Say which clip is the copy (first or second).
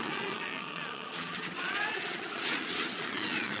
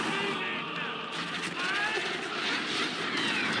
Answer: first